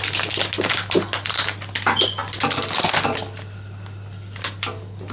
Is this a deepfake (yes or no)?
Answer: no